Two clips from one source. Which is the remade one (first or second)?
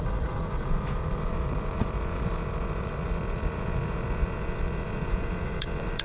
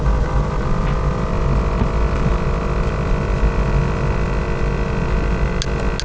first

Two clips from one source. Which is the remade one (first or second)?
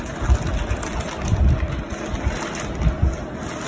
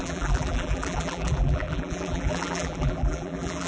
second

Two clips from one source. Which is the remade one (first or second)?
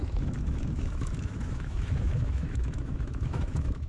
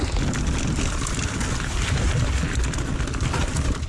first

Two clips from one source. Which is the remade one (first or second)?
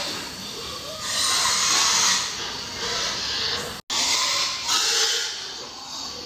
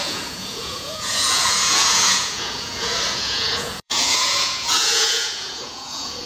second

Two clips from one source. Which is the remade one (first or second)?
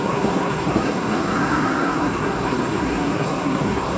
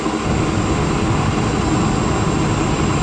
first